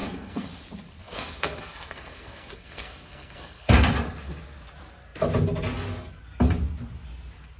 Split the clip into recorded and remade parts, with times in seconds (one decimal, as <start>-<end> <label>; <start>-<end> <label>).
0.0-0.5 remade; 0.5-1.0 recorded; 1.0-3.7 remade; 3.7-7.6 recorded